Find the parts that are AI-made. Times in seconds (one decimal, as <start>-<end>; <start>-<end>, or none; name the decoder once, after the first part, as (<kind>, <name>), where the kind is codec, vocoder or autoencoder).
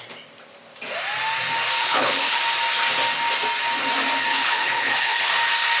1.8-2.4 (codec, HILCodec); 4.3-5.3